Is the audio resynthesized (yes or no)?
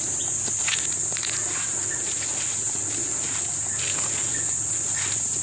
yes